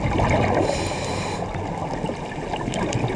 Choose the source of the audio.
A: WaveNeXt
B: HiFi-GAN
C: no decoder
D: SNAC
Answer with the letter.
C